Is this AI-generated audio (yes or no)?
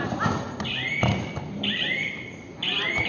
no